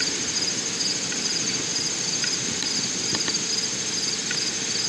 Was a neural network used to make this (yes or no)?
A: no